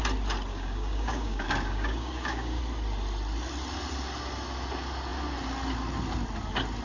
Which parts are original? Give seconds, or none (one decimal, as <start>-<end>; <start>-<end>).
0.0-0.5; 2.6-6.8